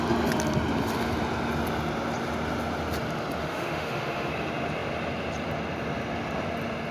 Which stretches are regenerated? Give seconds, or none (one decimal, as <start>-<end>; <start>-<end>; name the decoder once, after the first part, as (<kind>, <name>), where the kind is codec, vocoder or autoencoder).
3.4-4.3 (autoencoder, DAC-VAE)